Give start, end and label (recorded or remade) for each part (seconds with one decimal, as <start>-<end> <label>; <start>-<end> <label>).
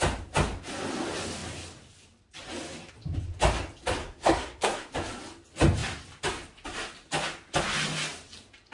0.0-4.0 recorded; 4.0-4.9 remade; 4.9-8.7 recorded